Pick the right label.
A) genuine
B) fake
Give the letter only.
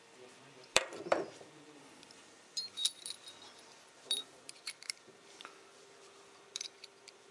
B